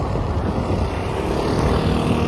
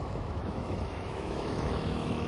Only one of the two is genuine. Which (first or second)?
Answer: first